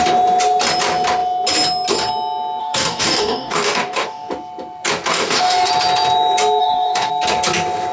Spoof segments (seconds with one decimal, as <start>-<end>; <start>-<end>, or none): 2.6-4.3; 5.1-5.7; 6.6-7.1